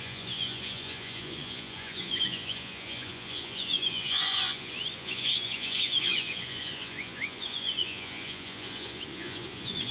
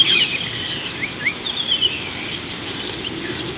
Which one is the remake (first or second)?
first